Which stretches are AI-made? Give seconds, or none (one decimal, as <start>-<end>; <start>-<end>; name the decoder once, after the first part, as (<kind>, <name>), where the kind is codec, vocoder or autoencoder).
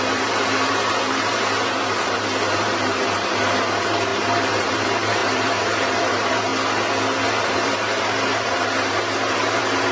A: 0.0-6.5 (vocoder, BigVGAN v2); 7.4-9.9